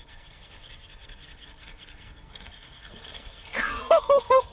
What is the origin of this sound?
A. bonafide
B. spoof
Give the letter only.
B